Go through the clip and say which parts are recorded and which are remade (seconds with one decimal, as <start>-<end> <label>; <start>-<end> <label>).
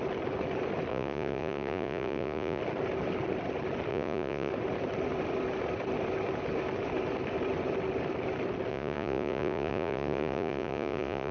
0.0-0.9 recorded; 0.9-2.6 remade; 2.6-3.9 recorded; 3.9-4.5 remade; 4.5-8.7 recorded; 8.7-11.3 remade